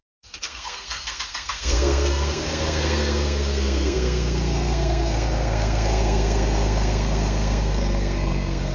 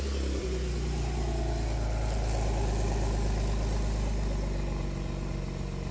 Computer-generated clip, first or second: first